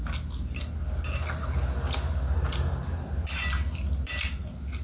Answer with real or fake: real